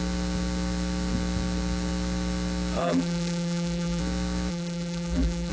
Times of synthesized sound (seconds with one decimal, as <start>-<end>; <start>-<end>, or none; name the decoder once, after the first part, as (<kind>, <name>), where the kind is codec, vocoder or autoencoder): 2.8-4.0 (vocoder, BigVGAN v2); 4.5-5.5